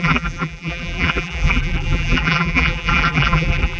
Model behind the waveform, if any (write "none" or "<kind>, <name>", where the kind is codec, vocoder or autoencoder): vocoder, BigVGAN v2